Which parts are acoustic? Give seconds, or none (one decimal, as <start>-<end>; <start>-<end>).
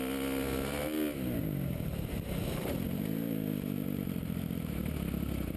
0.0-1.4; 4.8-5.6